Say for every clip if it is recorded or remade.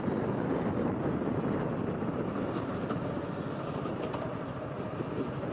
recorded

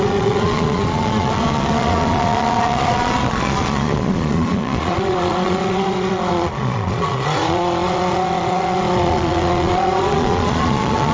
remade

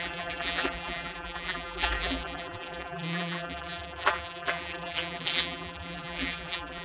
remade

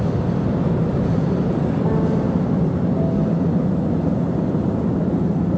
recorded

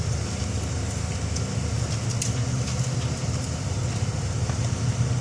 recorded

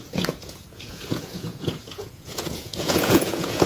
remade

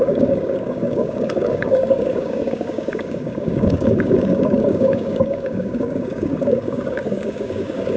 remade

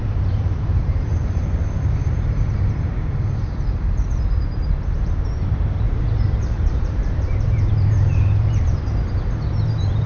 remade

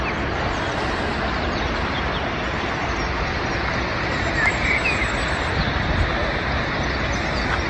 recorded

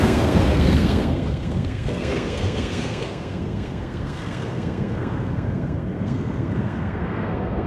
remade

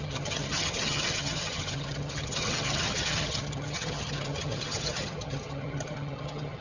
remade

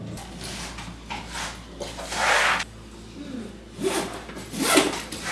recorded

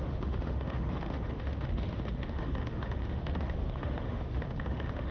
remade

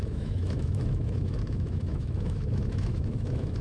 remade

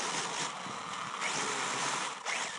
recorded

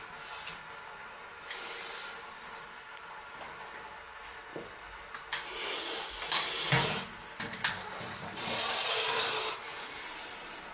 recorded